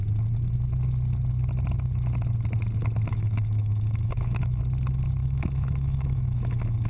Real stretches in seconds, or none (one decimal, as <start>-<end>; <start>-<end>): 0.0-3.1; 4.6-5.2